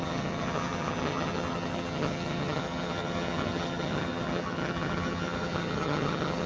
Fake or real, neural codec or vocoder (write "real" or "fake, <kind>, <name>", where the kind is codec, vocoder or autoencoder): fake, vocoder, HiFi-GAN